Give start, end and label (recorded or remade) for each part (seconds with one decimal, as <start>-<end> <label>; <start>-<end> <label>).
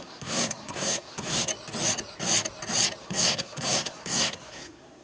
0.0-1.5 remade; 1.5-3.0 recorded; 3.0-5.0 remade